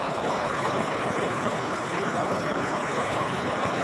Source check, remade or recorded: remade